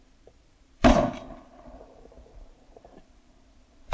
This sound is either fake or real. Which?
fake